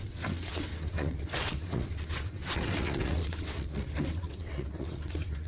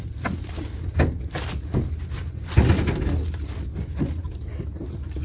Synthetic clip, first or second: first